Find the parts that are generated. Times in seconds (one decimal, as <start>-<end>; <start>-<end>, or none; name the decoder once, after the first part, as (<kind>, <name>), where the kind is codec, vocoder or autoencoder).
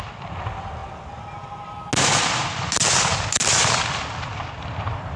none